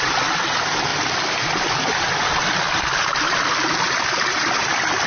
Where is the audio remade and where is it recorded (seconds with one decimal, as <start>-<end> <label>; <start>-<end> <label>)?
0.0-5.1 recorded

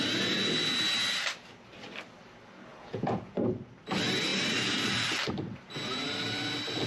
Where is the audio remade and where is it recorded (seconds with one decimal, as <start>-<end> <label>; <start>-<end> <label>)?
0.0-2.7 recorded; 2.7-3.3 remade; 3.3-6.9 recorded

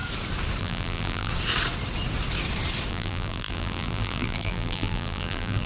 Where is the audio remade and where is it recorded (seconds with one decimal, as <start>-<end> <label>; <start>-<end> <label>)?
0.0-0.6 recorded; 0.6-1.3 remade; 1.3-2.9 recorded; 2.9-5.7 remade

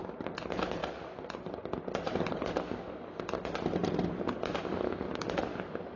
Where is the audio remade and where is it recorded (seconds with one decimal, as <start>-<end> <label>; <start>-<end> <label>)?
0.0-6.0 recorded

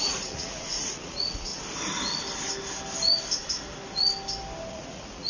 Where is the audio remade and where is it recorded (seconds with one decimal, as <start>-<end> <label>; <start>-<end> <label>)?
0.0-1.5 remade; 1.5-4.7 recorded; 4.7-5.3 remade

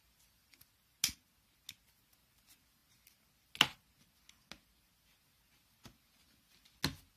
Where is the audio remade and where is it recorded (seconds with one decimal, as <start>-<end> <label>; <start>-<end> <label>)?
0.0-7.2 recorded

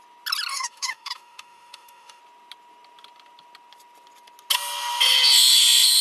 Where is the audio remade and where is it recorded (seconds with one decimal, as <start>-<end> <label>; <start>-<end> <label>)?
0.0-0.5 recorded; 0.5-2.2 remade; 2.2-6.0 recorded

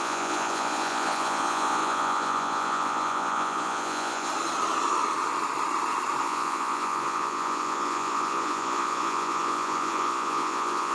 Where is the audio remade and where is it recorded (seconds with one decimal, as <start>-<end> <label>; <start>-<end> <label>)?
0.0-4.3 remade; 4.3-6.2 recorded; 6.2-10.9 remade